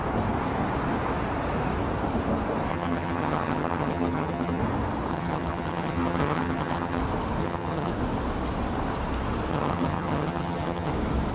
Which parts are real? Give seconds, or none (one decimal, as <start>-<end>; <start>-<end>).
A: 0.0-2.7; 4.6-5.1; 7.0-7.4; 7.9-9.5; 10.9-11.3